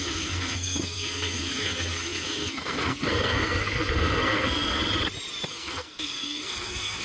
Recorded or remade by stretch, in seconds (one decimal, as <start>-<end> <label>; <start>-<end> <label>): 0.0-4.8 remade; 4.8-5.5 recorded; 5.5-7.0 remade